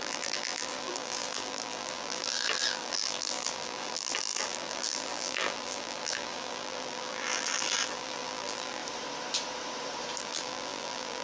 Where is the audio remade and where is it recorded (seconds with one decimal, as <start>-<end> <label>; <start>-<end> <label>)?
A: 0.0-8.8 remade; 8.8-10.2 recorded; 10.2-11.2 remade